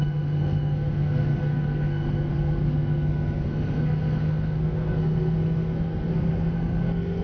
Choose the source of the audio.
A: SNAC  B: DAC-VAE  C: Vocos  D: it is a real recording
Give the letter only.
A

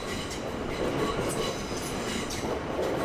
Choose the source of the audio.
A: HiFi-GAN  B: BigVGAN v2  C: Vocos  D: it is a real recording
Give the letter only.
D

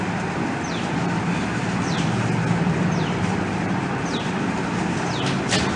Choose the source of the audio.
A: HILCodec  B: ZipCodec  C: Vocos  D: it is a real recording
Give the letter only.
D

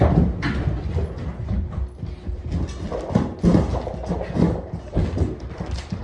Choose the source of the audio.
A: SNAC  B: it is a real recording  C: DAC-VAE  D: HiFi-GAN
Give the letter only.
B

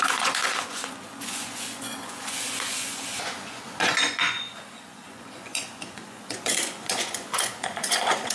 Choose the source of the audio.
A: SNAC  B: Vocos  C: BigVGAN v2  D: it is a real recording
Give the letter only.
B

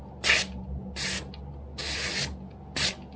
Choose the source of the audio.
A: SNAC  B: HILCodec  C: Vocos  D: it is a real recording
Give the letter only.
D